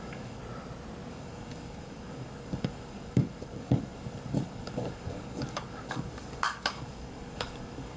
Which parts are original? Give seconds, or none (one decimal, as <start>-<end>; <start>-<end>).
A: 0.4-1.1